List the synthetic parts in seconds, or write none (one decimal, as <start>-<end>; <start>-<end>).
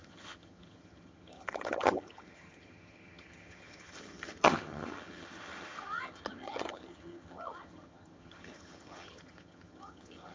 0.0-10.3